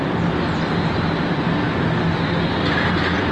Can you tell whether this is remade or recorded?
recorded